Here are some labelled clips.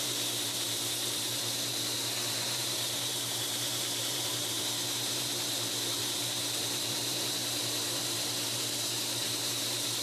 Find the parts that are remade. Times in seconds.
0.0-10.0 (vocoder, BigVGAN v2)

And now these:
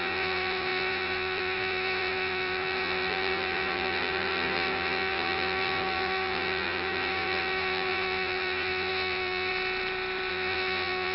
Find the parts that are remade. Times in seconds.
0.0-9.5 (vocoder, BigVGAN v2); 10.3-11.1

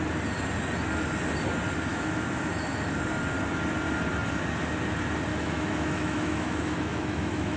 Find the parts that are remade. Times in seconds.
1.9-2.5 (autoencoder, DAC-VAE); 5.3-7.6

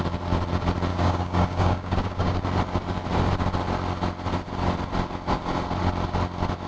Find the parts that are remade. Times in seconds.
0.9-2.4 (codec, DAC)